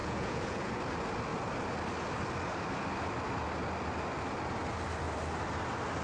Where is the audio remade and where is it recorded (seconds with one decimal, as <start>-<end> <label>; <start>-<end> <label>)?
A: 0.0-0.7 remade; 0.7-6.0 recorded